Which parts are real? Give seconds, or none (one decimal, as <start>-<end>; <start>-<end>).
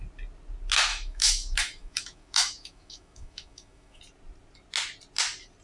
0.0-0.9; 4.0-5.6